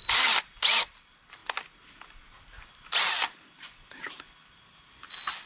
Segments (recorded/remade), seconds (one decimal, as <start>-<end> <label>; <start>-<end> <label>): 0.0-5.5 recorded